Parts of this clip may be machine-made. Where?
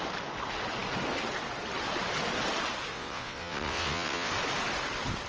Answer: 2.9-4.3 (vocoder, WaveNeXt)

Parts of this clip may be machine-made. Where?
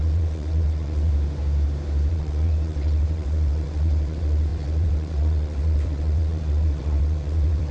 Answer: 0.0-1.1 (vocoder, WaveNeXt); 2.1-7.7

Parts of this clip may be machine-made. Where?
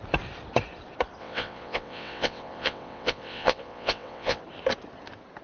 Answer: 1.2-4.4 (vocoder, WaveNeXt)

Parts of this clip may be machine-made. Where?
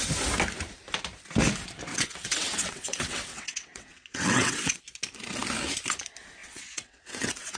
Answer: 1.9-4.8 (vocoder, WaveNeXt); 6.4-7.6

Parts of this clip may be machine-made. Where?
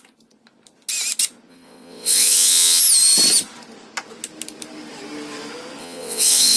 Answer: 1.5-2.8 (vocoder, WaveNeXt); 5.8-6.6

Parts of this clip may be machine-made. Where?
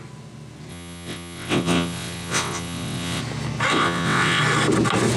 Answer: 0.7-3.2 (vocoder, WaveNeXt); 3.7-4.4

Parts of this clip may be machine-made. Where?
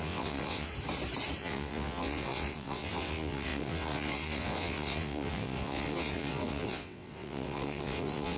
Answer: 0.0-0.7 (vocoder, WaveNeXt); 1.4-8.4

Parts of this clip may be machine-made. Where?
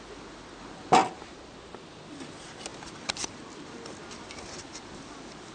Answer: none